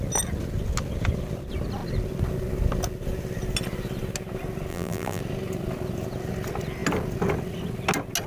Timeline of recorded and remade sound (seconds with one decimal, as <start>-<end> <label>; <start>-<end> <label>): 0.0-4.7 recorded; 4.7-5.2 remade; 5.2-8.3 recorded